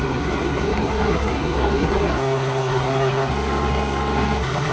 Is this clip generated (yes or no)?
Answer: yes